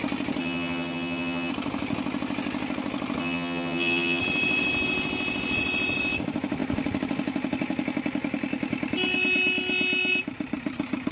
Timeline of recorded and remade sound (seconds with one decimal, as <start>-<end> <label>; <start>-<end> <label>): 0.0-0.4 recorded; 0.4-1.5 remade; 1.5-3.2 recorded; 3.2-4.2 remade; 4.2-11.1 recorded